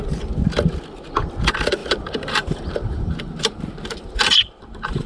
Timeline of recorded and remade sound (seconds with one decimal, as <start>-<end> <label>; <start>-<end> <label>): 0.0-1.8 recorded; 1.8-5.1 remade